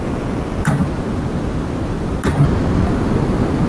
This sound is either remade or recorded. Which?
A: recorded